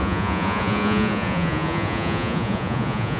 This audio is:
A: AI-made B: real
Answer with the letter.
A